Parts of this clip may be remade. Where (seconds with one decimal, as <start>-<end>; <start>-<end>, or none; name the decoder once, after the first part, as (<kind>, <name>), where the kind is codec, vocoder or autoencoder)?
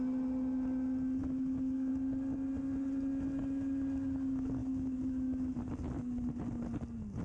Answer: 1.2-1.9 (autoencoder, DAC-VAE); 4.6-5.6